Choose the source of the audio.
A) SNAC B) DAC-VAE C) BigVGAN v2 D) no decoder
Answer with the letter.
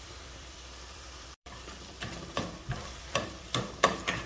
C